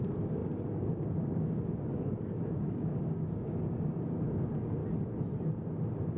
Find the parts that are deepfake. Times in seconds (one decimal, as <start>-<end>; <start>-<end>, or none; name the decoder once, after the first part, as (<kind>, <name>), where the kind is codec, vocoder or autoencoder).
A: 0.0-4.8 (codec, DAC)